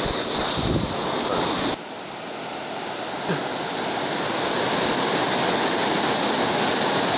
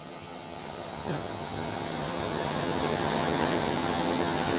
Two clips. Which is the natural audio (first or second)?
first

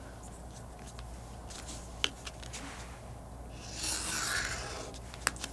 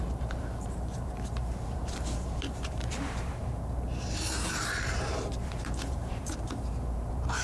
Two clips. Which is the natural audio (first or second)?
first